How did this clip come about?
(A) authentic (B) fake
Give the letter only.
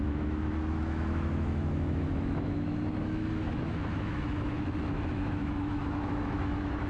B